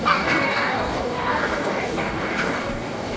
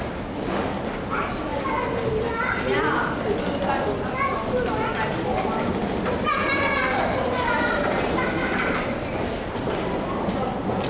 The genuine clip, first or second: second